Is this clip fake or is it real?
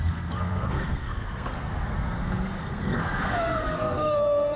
fake